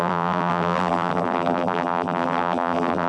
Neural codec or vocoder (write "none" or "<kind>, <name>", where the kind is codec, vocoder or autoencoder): vocoder, BigVGAN v2